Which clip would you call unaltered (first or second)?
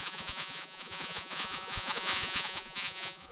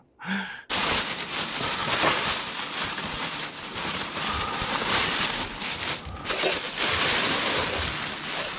second